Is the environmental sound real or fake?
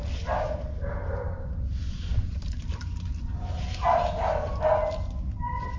real